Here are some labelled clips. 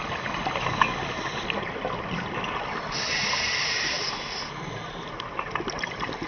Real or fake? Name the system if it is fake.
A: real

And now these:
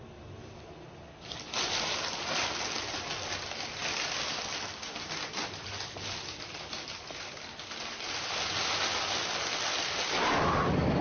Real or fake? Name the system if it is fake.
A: real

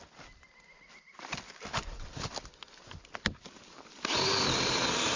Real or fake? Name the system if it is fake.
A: real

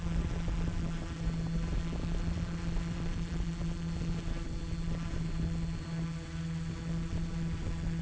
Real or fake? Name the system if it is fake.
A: real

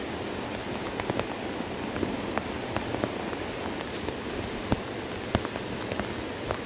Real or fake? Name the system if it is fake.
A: real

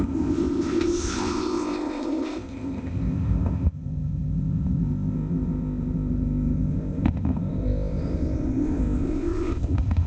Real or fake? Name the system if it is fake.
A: fake, codec, ZipCodec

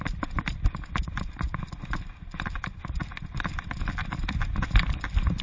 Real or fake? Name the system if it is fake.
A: real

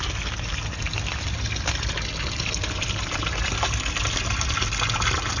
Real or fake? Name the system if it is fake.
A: real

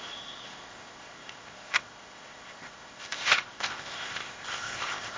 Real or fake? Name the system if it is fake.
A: fake, codec, ZipCodec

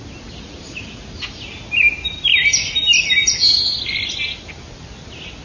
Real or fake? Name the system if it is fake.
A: real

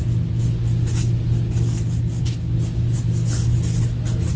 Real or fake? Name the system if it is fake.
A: real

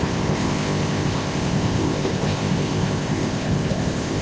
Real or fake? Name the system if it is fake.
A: fake, codec, ZipCodec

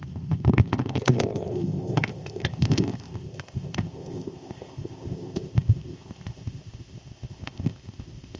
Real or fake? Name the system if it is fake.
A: fake, codec, ZipCodec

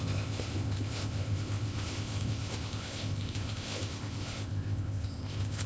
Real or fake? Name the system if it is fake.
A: fake, codec, ZipCodec